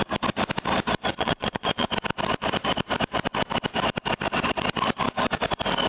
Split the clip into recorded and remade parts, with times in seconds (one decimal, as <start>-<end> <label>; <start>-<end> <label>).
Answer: 0.0-1.1 recorded; 1.1-1.9 remade; 1.9-5.9 recorded